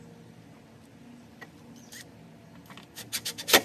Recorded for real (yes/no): yes